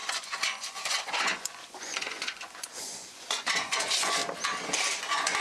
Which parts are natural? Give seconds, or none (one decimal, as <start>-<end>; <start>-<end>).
4.2-5.0